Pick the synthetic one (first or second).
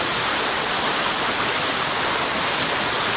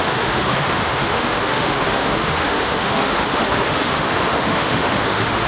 second